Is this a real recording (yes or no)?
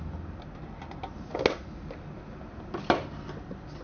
yes